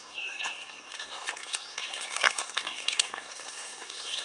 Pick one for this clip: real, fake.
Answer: fake